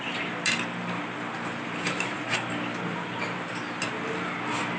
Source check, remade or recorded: recorded